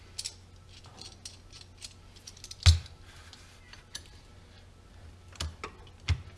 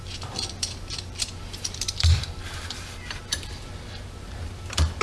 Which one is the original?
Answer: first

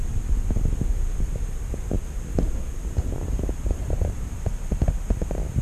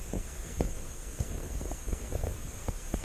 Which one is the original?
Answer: first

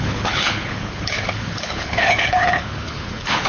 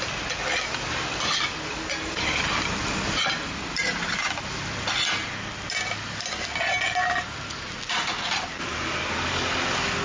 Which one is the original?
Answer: second